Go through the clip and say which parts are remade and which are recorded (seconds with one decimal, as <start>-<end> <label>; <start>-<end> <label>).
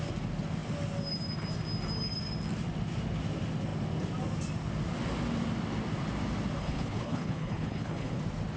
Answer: 0.0-6.6 recorded; 6.6-8.2 remade; 8.2-8.6 recorded